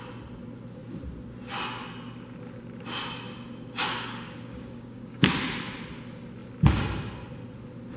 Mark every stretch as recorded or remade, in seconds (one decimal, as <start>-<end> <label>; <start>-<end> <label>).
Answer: 0.0-3.8 recorded; 3.8-5.4 remade; 5.4-8.0 recorded